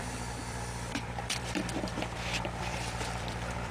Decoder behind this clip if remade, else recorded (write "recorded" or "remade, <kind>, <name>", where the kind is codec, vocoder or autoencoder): remade, vocoder, BigVGAN v2